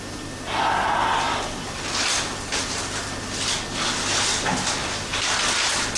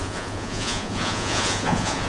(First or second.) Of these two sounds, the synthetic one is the second